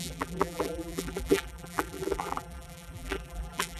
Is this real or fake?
fake